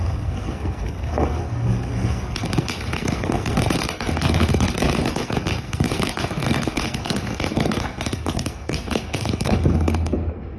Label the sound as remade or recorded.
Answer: remade